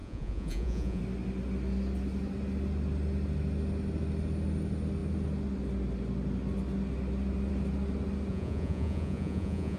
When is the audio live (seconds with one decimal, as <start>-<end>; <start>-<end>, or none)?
1.0-8.3